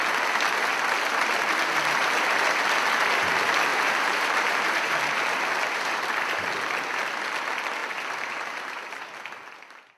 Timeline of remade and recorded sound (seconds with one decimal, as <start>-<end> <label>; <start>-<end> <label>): 0.0-3.7 recorded; 3.7-6.5 remade; 6.5-7.8 recorded; 7.8-9.0 remade; 9.0-10.0 recorded